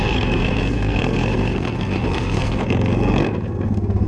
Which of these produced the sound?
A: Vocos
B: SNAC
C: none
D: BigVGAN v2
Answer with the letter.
B